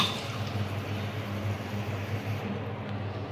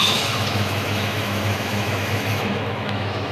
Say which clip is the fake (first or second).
second